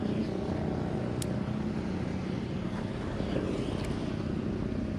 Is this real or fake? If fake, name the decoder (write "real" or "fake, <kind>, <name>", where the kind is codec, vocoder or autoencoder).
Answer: real